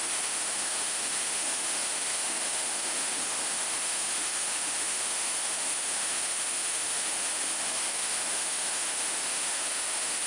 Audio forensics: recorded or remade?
remade